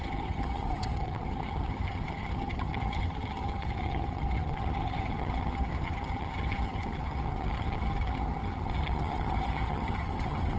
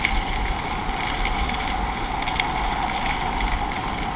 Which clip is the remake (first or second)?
first